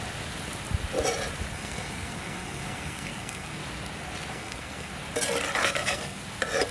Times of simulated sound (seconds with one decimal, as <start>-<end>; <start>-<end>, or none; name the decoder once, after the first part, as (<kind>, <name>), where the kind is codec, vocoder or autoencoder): 1.5-3.6 (codec, SNAC); 4.3-4.9; 5.6-6.2